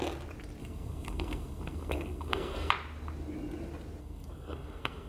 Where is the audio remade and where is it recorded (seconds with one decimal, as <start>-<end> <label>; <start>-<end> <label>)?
0.0-0.6 recorded; 0.6-2.7 remade; 2.7-4.0 recorded; 4.0-5.1 remade